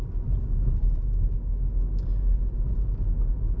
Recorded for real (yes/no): yes